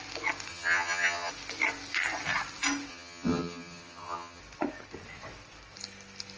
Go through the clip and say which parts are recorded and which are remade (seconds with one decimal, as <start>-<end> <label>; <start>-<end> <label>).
0.0-0.5 recorded; 0.5-1.3 remade; 1.3-2.9 recorded; 2.9-4.4 remade; 4.4-6.4 recorded